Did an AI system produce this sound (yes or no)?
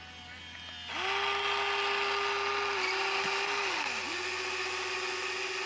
no